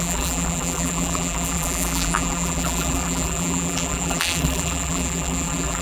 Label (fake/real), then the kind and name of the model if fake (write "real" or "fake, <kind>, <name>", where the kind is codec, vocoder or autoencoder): fake, vocoder, BigVGAN v2